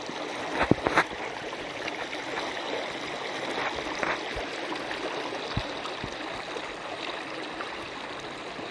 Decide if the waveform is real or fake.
real